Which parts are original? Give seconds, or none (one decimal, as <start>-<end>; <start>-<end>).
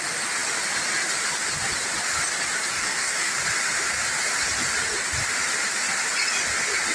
0.0-2.7; 3.3-6.9